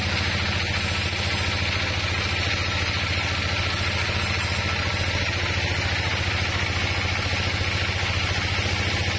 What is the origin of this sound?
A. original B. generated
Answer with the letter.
A